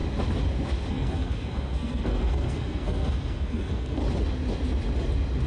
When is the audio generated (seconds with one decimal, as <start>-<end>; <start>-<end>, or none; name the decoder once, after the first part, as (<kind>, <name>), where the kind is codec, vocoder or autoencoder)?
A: 0.9-4.0 (codec, SNAC)